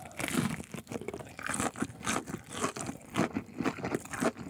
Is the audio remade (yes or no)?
no